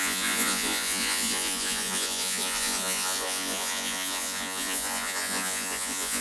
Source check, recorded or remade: remade